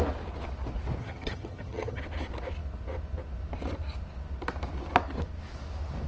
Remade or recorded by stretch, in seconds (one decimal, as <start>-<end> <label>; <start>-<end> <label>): 0.0-1.0 recorded; 1.0-2.0 remade; 2.0-6.1 recorded

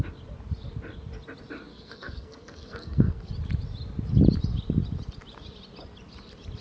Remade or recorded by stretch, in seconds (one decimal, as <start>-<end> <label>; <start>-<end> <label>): 0.0-1.7 recorded; 1.7-3.3 remade; 3.3-6.6 recorded

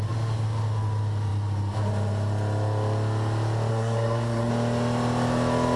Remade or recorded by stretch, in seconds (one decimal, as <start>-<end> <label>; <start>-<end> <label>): 0.0-3.7 recorded; 3.7-4.5 remade; 4.5-5.8 recorded